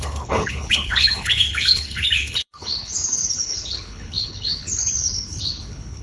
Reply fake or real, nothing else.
fake